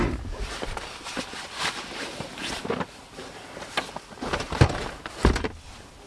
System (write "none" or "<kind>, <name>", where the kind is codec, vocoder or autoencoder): none